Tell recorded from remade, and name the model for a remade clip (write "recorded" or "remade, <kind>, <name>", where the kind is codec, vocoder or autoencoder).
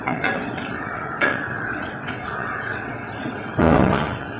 remade, vocoder, WaveNeXt